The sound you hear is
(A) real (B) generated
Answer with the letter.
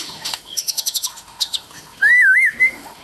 B